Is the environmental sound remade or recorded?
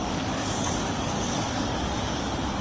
remade